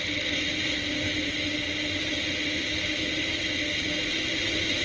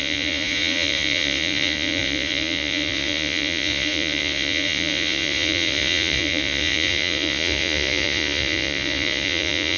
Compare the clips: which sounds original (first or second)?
first